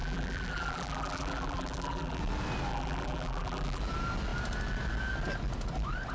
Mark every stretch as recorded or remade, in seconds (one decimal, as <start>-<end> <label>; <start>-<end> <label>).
0.0-2.2 remade; 2.2-2.7 recorded; 2.7-3.8 remade; 3.8-6.1 recorded